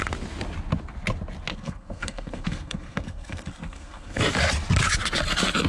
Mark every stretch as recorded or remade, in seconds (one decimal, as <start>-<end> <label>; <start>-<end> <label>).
0.0-1.5 recorded; 1.5-4.2 remade; 4.2-5.7 recorded